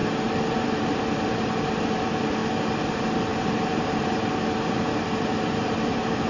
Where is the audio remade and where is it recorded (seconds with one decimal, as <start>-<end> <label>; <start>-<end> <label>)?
0.0-2.4 remade; 2.4-2.9 recorded; 2.9-6.3 remade